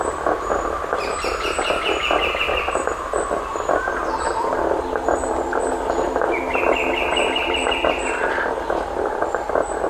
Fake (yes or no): no